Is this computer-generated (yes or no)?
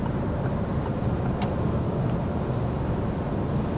no